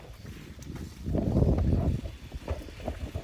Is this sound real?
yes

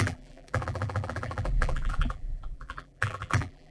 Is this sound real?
no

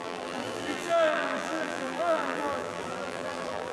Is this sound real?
no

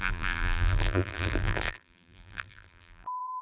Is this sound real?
no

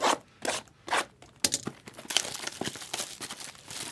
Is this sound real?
yes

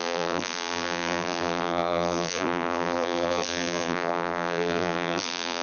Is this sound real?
no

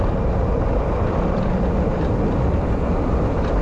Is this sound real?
no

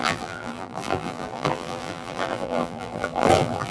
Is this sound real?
no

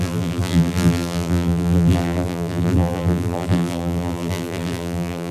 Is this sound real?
no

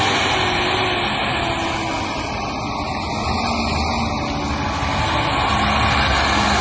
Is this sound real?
yes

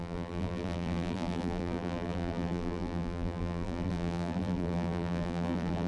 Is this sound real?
no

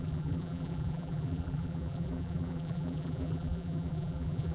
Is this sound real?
no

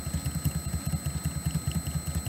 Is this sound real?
yes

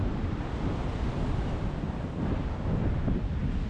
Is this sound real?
no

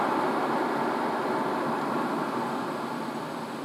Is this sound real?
yes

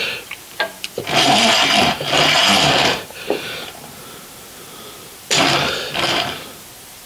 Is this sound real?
no